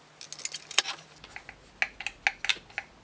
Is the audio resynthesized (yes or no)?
no